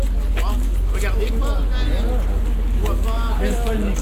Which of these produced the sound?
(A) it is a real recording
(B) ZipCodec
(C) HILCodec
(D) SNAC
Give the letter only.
A